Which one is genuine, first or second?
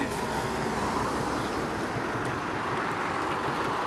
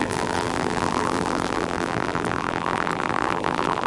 first